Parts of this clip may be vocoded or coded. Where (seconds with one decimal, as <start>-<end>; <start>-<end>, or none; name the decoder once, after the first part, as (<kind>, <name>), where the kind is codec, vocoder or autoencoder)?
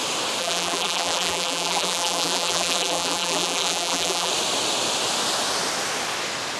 0.4-4.3 (vocoder, BigVGAN v2)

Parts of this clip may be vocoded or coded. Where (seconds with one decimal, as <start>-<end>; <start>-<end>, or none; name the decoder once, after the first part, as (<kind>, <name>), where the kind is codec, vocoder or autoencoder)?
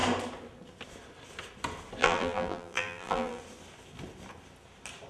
2.0-3.4 (vocoder, BigVGAN v2)